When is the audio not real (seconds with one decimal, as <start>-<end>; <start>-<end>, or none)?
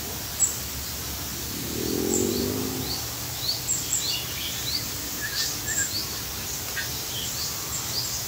none